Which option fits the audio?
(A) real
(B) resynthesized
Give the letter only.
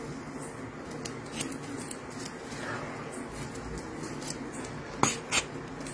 A